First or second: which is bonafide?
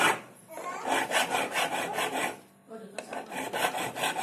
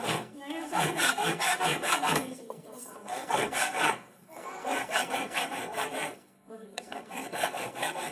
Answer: first